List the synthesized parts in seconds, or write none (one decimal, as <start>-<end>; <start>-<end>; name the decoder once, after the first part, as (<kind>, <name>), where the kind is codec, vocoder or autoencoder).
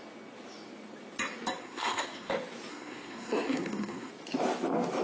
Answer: 1.6-2.3 (codec, SNAC); 2.7-4.1